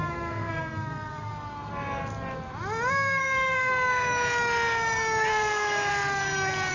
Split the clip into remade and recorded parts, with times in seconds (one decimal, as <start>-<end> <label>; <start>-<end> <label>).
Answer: 0.0-1.3 remade; 1.3-2.9 recorded; 2.9-3.7 remade; 3.7-5.3 recorded; 5.3-5.9 remade; 5.9-6.7 recorded